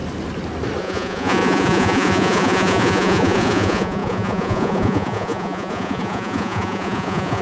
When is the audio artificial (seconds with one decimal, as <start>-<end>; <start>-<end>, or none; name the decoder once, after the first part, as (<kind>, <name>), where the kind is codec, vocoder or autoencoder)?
0.8-7.4 (vocoder, Vocos)